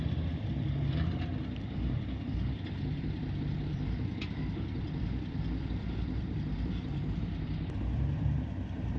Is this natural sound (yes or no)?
no